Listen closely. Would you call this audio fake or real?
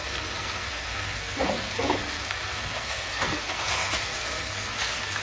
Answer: fake